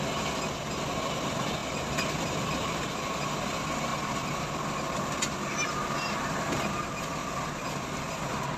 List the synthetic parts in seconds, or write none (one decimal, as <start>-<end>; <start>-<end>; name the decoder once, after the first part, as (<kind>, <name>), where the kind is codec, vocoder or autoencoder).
1.6-3.1 (vocoder, BigVGAN v2); 3.9-4.7